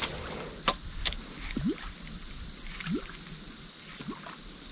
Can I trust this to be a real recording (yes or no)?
yes